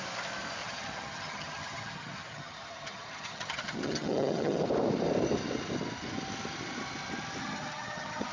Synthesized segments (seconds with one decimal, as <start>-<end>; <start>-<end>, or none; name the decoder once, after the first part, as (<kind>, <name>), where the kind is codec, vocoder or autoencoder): 0.6-4.6 (vocoder, HiFi-GAN); 7.4-8.3